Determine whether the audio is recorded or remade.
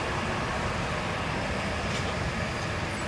recorded